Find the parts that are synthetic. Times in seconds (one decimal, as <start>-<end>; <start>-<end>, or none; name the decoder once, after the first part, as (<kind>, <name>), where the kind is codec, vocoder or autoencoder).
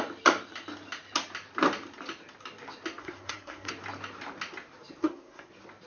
3.0-3.7 (codec, SNAC); 5.0-5.5